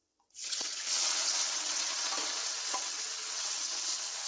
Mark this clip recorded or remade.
remade